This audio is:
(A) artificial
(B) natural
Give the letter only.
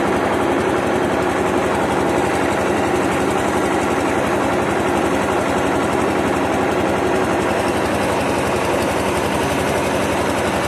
B